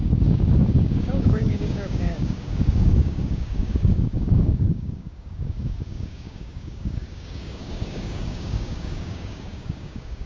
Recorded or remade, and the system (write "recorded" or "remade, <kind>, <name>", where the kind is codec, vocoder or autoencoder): remade, codec, DAC